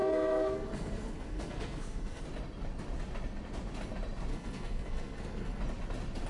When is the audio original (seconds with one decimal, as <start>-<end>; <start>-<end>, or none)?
2.2-4.3; 5.6-6.3